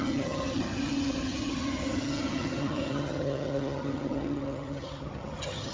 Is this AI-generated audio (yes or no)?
yes